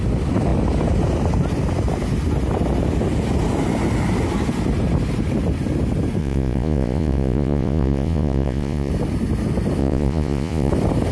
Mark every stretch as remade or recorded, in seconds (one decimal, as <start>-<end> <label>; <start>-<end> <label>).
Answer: 0.0-6.2 recorded; 6.2-8.9 remade; 8.9-9.8 recorded; 9.8-10.7 remade; 10.7-11.1 recorded